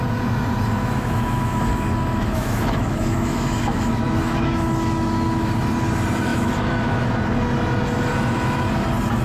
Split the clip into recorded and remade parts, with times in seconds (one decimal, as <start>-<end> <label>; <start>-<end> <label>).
0.0-0.8 recorded; 0.8-5.5 remade; 5.5-6.3 recorded; 6.3-7.1 remade; 7.1-9.2 recorded